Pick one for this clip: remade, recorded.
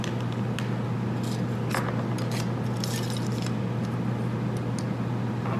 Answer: recorded